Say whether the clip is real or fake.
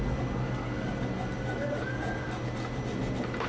real